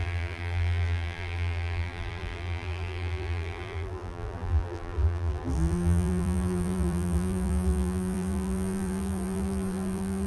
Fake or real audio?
fake